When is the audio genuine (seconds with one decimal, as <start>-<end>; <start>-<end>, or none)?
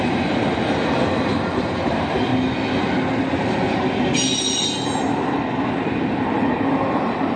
2.3-6.7